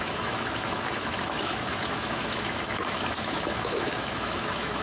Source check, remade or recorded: remade